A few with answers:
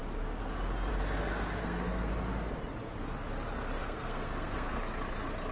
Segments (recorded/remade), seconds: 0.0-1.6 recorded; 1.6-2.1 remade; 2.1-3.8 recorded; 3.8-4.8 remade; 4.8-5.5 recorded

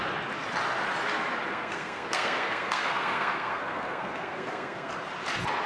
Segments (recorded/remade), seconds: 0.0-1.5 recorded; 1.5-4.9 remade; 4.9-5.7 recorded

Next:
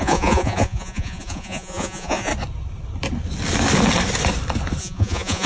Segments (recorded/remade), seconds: 0.0-2.3 remade; 2.3-4.8 recorded; 4.8-5.5 remade